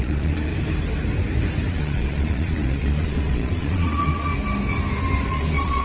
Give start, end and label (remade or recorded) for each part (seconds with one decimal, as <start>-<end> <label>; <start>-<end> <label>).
0.0-0.5 remade; 0.5-1.7 recorded; 1.7-4.3 remade; 4.3-5.3 recorded; 5.3-5.8 remade